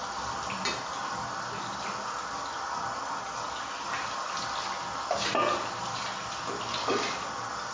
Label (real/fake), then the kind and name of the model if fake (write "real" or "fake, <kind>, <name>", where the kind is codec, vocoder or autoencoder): real